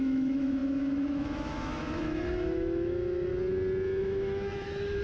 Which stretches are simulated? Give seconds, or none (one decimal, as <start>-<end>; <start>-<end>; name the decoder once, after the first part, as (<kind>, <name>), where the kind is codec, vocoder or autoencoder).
0.0-3.3 (autoencoder, DAC-VAE); 4.0-5.0